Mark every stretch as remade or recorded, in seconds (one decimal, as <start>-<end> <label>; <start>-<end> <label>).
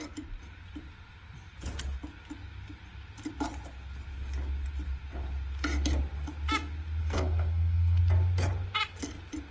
0.0-7.0 recorded; 7.0-8.0 remade; 8.0-9.5 recorded